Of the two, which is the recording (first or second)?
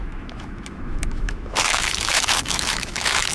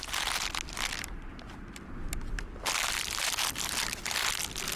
second